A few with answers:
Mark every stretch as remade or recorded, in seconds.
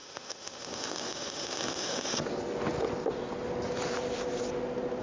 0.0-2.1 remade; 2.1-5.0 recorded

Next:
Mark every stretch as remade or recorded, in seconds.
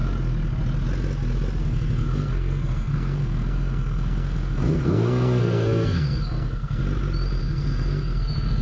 0.0-1.6 recorded; 1.6-6.8 remade; 6.8-7.4 recorded; 7.4-8.6 remade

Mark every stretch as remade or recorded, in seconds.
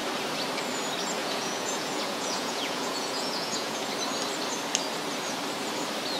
0.0-1.2 recorded; 1.2-3.9 remade; 3.9-6.2 recorded